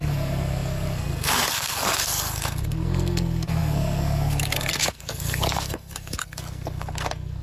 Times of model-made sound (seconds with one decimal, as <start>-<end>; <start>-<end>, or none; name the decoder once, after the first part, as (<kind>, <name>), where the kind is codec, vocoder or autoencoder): 0.0-7.4 (codec, SNAC)